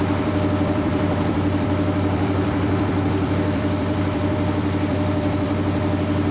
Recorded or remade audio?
remade